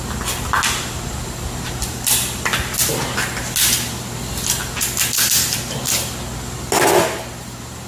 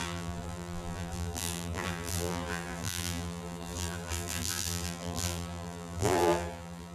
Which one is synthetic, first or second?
second